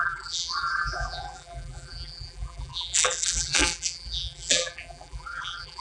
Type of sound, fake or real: fake